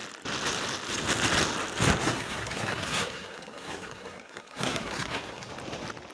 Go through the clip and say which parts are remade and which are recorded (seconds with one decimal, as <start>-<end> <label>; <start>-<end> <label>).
0.0-2.0 recorded; 2.0-5.5 remade; 5.5-6.1 recorded